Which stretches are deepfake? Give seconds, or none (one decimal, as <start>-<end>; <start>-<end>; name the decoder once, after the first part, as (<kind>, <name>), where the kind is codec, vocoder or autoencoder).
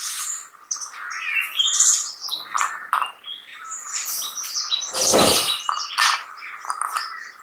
0.7-2.2 (vocoder, BigVGAN v2); 3.5-5.9